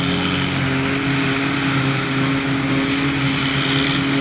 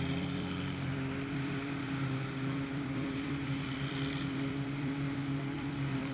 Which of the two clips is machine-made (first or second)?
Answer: second